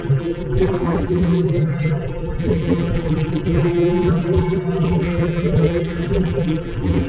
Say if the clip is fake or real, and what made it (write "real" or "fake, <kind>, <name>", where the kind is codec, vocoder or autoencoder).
fake, vocoder, BigVGAN v2